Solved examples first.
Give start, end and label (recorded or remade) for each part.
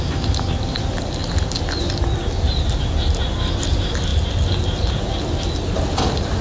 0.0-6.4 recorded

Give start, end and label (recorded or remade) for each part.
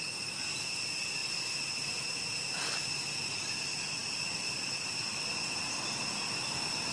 0.0-1.2 recorded; 1.2-1.9 remade; 1.9-4.0 recorded; 4.0-5.3 remade; 5.3-6.9 recorded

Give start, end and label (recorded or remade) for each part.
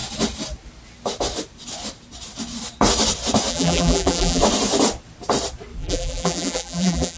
0.0-3.5 recorded; 3.5-4.4 remade; 4.4-5.8 recorded; 5.8-7.2 remade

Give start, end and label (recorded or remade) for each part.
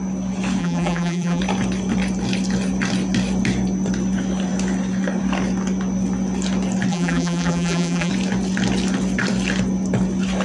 0.0-0.6 recorded; 0.6-1.4 remade; 1.4-6.9 recorded; 6.9-8.1 remade; 8.1-10.4 recorded